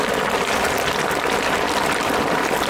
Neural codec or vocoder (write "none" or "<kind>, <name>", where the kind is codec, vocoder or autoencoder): none